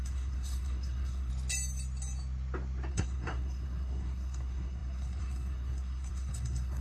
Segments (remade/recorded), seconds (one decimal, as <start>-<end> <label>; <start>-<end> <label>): 0.0-1.3 remade; 1.3-2.9 recorded; 2.9-6.8 remade